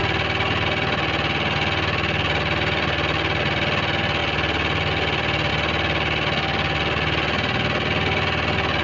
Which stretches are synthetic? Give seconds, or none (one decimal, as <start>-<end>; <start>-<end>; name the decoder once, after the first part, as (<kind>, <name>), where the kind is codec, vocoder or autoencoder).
none